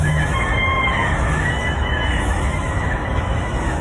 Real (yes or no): no